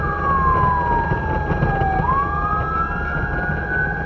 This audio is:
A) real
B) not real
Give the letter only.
A